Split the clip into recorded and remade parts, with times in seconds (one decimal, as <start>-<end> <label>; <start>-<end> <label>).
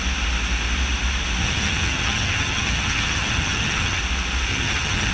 0.0-1.4 recorded; 1.4-4.0 remade; 4.0-4.5 recorded; 4.5-5.1 remade